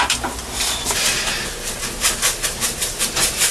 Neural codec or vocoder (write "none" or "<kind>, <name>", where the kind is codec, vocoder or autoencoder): none